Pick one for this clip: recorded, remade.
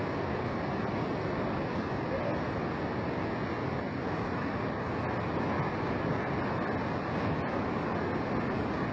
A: recorded